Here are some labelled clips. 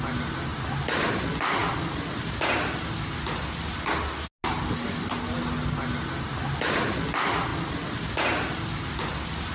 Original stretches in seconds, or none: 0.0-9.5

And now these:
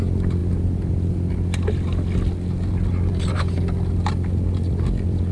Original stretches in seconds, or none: 0.0-5.3